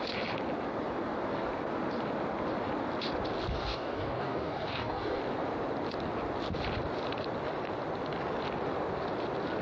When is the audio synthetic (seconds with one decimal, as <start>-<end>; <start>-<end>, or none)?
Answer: 3.5-5.2